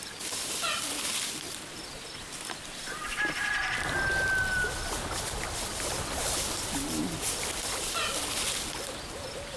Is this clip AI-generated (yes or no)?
no